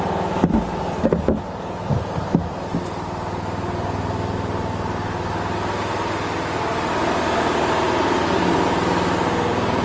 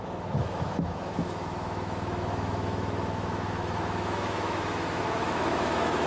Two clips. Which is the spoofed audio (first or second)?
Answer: second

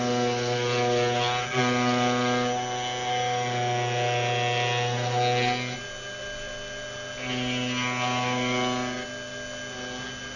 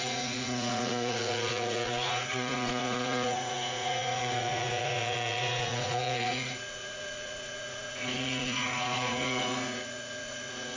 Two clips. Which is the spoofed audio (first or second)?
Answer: second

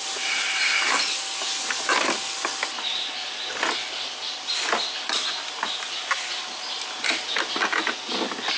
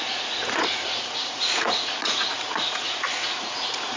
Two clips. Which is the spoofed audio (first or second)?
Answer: second